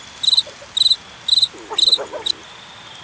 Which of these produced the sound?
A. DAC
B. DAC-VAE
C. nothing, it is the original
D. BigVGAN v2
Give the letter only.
C